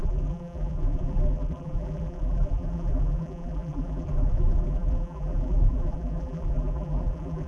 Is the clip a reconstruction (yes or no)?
yes